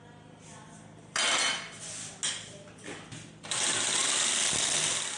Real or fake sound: real